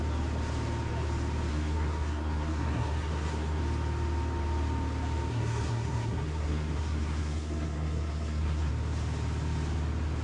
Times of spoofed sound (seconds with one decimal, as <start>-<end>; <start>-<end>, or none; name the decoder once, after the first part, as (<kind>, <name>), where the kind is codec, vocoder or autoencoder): 1.5-3.6 (codec, SNAC); 5.3-8.7